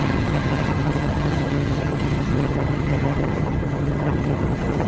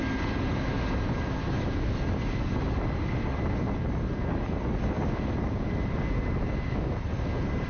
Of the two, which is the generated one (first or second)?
first